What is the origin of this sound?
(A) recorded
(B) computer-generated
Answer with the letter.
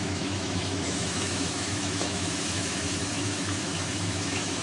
B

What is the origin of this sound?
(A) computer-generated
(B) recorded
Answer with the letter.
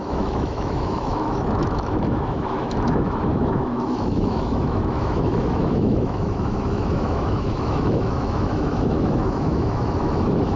A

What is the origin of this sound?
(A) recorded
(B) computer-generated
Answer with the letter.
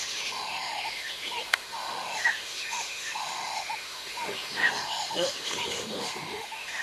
B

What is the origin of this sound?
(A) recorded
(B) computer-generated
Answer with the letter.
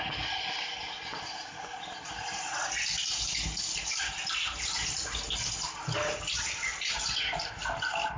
A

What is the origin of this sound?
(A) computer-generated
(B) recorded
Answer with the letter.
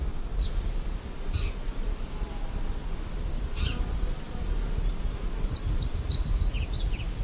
B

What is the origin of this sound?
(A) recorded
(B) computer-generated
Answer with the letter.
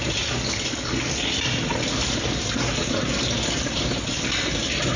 A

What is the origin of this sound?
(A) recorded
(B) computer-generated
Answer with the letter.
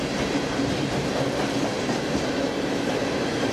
A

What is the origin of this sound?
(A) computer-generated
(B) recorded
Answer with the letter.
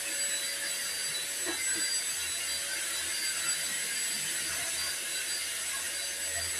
B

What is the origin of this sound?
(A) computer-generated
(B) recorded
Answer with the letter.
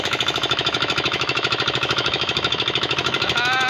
A